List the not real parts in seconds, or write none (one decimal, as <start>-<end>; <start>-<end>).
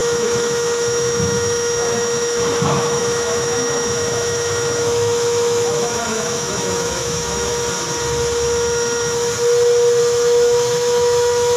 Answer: 0.0-7.5; 10.0-11.6